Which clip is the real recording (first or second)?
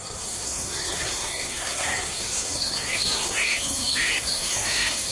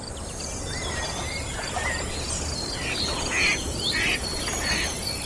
second